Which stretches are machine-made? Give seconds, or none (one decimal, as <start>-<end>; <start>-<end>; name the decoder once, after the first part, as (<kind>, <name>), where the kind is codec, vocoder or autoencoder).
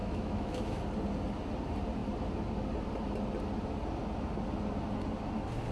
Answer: 0.0-0.8 (autoencoder, DAC-VAE)